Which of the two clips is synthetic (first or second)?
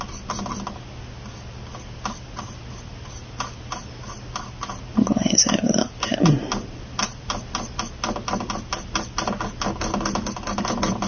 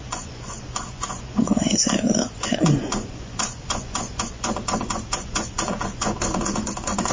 second